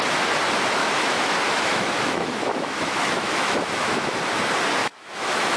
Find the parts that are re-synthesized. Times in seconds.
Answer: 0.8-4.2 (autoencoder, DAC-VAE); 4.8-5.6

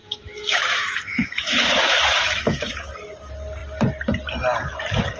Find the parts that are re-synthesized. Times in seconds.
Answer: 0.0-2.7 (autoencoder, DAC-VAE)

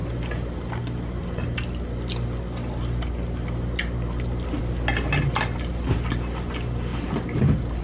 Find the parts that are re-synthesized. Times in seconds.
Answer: none

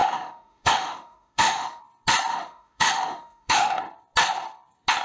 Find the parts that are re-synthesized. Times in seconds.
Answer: 0.0-1.8 (autoencoder, DAC-VAE); 2.3-3.8

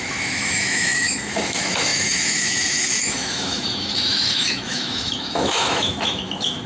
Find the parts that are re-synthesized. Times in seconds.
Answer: 0.0-6.7 (autoencoder, DAC-VAE)